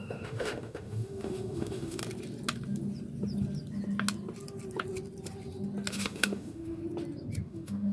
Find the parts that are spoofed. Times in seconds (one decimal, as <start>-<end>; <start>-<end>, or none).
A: 0.0-2.0; 5.9-6.8; 7.4-7.9